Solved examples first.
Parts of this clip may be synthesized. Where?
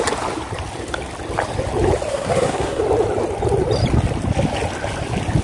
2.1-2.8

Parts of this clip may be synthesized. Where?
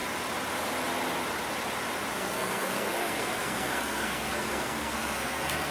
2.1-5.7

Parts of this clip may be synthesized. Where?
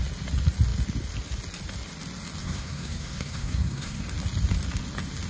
2.4-4.0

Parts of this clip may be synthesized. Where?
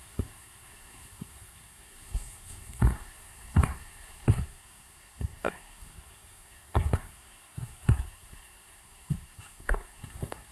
0.0-10.5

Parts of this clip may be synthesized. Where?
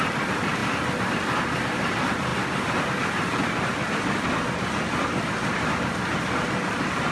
none